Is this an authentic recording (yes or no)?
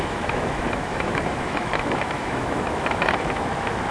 no